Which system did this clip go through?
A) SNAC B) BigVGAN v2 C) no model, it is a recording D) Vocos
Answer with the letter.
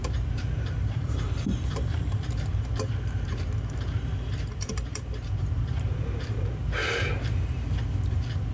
B